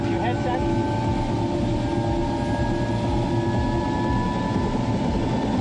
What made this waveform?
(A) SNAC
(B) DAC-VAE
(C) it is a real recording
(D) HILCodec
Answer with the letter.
C